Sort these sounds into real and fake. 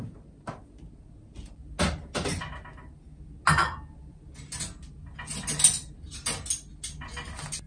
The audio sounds real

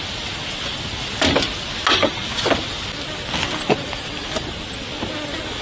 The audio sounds real